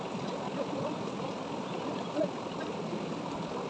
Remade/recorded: recorded